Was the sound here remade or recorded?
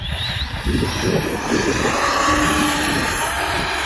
recorded